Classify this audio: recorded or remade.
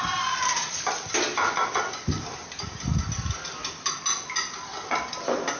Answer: recorded